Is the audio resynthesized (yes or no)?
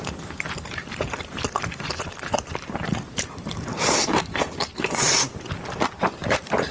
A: yes